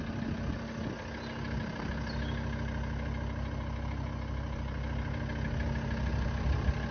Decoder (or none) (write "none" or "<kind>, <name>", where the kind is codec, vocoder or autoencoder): none